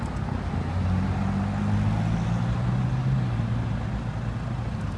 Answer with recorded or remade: recorded